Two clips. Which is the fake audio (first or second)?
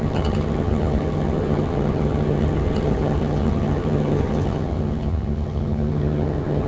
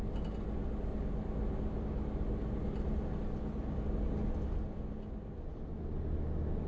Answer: first